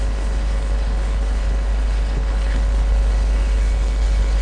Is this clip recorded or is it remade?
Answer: remade